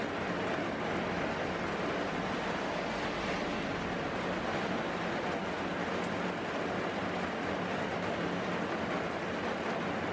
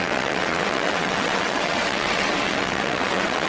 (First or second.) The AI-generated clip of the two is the second